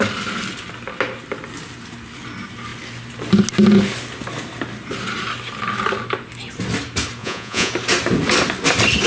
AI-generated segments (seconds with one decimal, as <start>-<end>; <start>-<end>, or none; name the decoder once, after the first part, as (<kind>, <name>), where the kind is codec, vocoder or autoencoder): 7.2-7.7 (vocoder, Vocos)